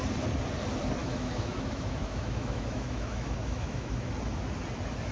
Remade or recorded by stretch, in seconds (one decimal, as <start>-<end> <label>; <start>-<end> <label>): 0.0-1.0 recorded; 1.0-4.1 remade; 4.1-5.1 recorded